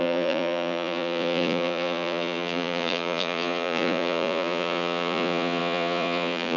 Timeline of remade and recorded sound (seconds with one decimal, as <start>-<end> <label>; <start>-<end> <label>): 0.0-6.6 remade